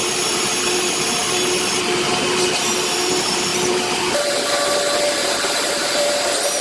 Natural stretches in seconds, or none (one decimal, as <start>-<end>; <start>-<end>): 0.0-6.6